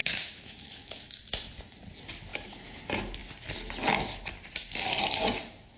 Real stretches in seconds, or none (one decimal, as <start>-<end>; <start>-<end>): 1.2-2.3; 2.8-5.8